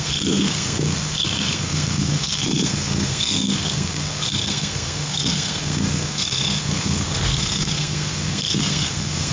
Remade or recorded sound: remade